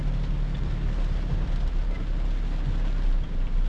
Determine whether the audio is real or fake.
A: real